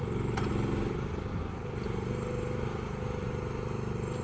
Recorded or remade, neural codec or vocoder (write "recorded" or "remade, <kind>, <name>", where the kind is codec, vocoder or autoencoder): recorded